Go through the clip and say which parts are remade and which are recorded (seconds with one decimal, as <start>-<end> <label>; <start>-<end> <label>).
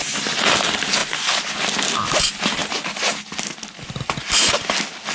0.0-5.1 recorded